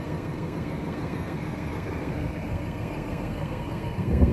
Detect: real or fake fake